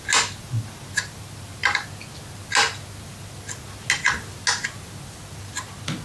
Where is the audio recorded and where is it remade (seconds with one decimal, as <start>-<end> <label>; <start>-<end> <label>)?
0.0-6.0 recorded